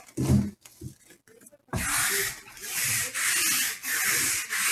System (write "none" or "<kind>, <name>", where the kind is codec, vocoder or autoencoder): none